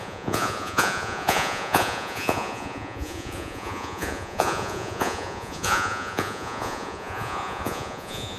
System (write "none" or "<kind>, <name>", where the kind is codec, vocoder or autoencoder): vocoder, Vocos